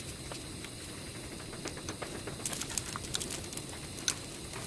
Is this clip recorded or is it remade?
recorded